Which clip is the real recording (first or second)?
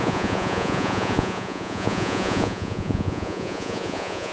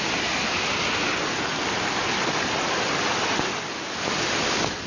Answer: second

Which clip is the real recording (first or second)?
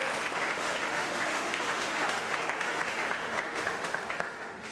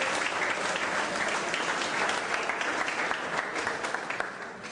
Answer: second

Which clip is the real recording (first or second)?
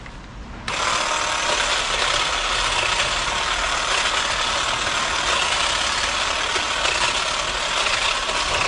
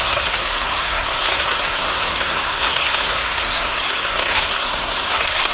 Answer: first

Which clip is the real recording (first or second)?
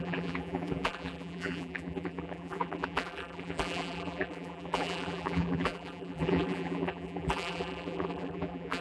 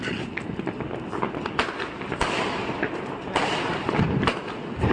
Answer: second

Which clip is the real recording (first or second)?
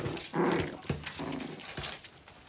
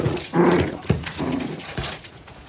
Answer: first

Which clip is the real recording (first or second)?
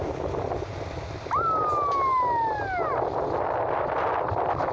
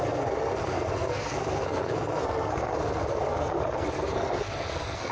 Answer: first